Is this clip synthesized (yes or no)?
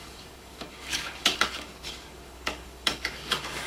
yes